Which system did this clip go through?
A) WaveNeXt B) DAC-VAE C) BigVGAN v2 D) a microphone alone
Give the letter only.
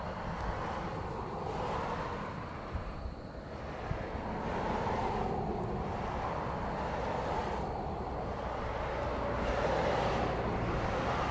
D